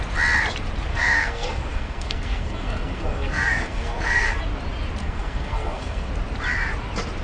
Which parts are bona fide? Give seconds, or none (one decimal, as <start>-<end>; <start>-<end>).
0.0-0.9; 4.4-5.0; 6.1-7.2